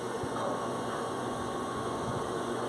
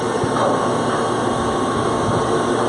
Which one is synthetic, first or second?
first